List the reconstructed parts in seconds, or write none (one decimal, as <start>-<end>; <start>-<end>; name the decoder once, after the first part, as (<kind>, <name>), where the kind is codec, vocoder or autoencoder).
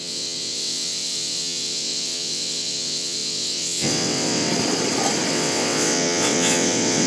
0.0-4.5 (vocoder, WaveNeXt); 5.3-7.1